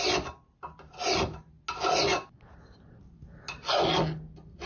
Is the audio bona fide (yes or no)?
yes